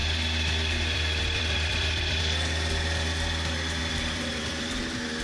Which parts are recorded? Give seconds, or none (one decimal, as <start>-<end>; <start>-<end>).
2.2-3.8; 4.8-5.2